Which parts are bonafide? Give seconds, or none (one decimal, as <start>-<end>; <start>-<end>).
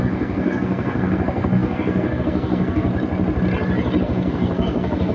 2.9-4.0